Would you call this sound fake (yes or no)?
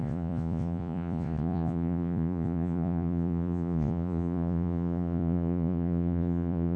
yes